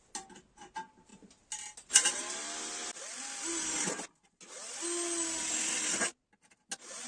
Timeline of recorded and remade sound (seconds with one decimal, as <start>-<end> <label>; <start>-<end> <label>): 0.0-7.1 recorded